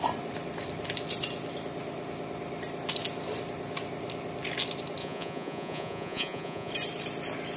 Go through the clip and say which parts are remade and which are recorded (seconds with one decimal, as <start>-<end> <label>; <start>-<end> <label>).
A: 0.0-5.0 recorded; 5.0-6.7 remade; 6.7-7.6 recorded